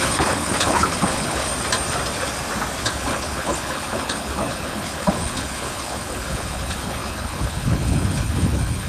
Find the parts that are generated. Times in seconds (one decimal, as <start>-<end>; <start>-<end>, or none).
0.0-1.5; 2.8-8.9